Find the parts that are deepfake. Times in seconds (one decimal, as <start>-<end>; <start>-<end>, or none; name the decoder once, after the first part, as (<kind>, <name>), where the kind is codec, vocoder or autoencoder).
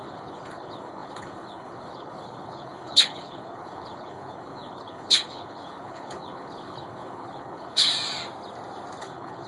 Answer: 0.0-7.9 (codec, HILCodec); 9.0-9.5